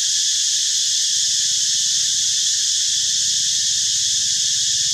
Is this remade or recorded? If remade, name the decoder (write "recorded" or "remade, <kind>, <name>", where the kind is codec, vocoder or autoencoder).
remade, vocoder, BigVGAN v2